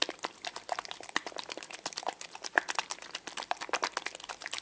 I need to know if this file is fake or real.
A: real